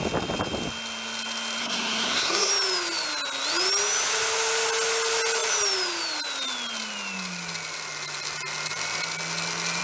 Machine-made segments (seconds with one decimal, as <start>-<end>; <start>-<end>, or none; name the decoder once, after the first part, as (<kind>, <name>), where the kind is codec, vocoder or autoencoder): 1.6-2.5 (codec, SNAC)